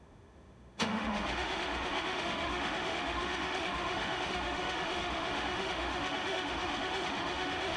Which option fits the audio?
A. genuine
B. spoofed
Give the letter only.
B